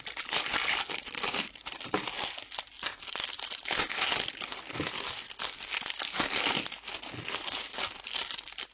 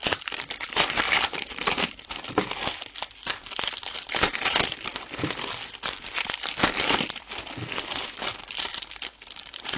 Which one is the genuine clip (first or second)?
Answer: first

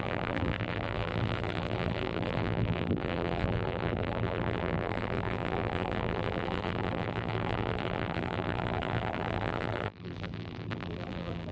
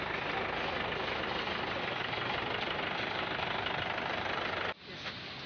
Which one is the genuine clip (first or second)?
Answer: second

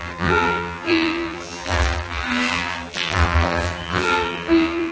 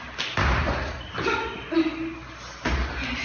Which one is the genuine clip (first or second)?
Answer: second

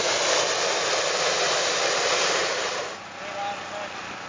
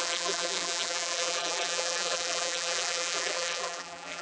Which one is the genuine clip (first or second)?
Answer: first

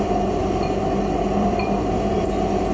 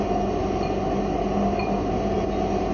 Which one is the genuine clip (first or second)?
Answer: second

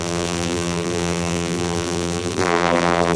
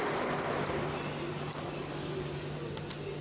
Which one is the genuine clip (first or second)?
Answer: second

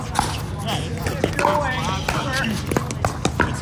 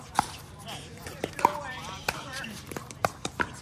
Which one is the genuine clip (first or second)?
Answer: first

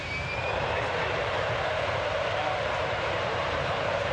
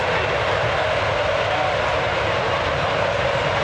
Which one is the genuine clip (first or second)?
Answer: second